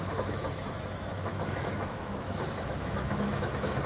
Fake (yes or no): yes